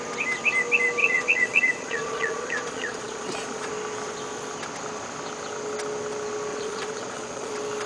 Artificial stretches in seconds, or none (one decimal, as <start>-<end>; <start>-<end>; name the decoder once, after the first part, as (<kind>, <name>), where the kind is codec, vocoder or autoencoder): 1.0-3.7 (vocoder, Vocos); 6.5-7.5